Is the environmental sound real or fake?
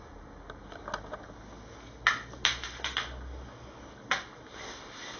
real